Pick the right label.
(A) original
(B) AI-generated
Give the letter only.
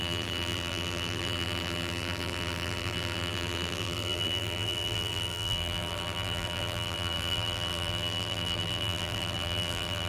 B